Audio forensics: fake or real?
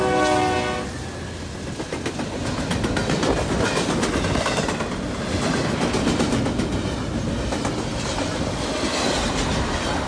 real